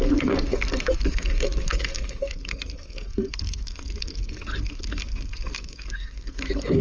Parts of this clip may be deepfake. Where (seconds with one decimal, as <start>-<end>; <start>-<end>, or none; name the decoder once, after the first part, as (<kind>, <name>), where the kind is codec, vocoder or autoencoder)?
0.0-6.8 (codec, SNAC)